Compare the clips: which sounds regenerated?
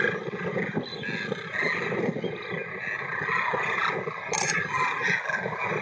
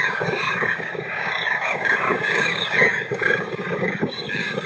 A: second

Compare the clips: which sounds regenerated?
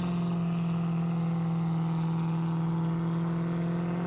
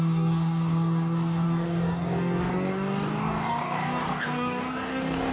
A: second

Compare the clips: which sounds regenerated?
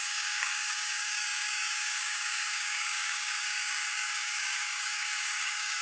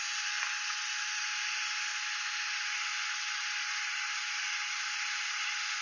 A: first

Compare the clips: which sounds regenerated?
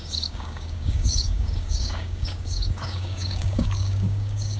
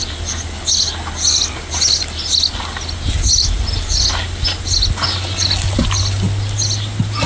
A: first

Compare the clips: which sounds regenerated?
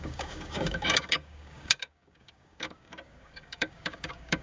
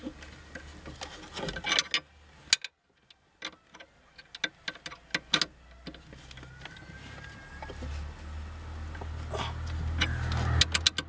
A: first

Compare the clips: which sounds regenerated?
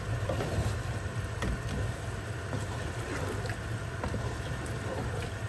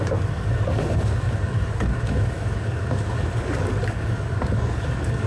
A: second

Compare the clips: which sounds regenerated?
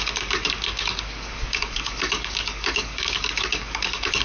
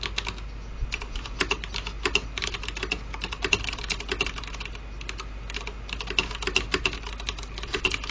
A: first